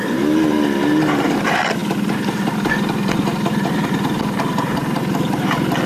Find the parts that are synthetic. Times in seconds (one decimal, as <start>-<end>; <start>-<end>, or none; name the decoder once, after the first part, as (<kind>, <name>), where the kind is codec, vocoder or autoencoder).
none